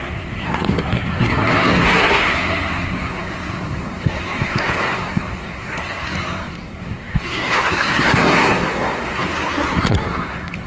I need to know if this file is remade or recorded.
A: remade